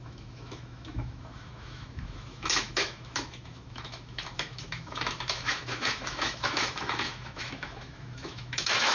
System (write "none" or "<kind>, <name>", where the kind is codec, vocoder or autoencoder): autoencoder, DAC-VAE